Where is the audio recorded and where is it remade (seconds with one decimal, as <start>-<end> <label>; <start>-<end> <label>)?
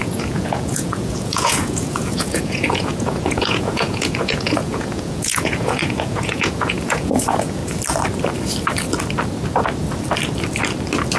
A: 0.0-7.6 remade; 7.6-11.2 recorded